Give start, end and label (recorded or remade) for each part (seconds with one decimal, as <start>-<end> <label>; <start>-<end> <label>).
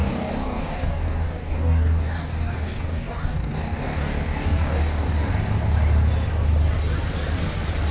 0.0-5.3 remade; 5.3-7.9 recorded